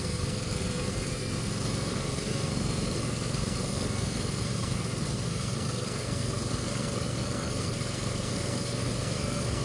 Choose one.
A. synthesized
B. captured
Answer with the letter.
A